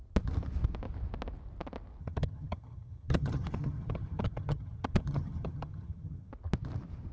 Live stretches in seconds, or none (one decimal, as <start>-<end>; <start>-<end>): 0.0-2.0; 6.3-7.1